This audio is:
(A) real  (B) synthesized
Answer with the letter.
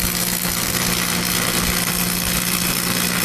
A